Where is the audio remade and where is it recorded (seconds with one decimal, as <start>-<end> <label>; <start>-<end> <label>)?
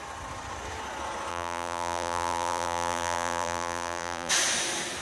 0.0-1.3 recorded; 1.3-4.3 remade; 4.3-5.0 recorded